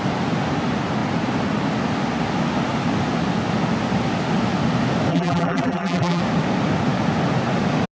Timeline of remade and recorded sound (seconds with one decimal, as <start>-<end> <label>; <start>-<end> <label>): 0.0-5.1 recorded; 5.1-6.2 remade; 6.2-8.0 recorded